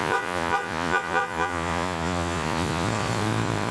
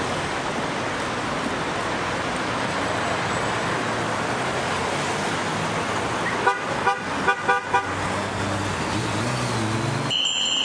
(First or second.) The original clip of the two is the second